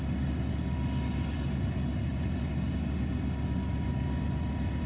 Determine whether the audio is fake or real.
real